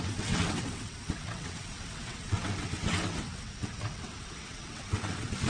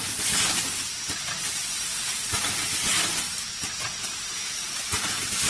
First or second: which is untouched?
second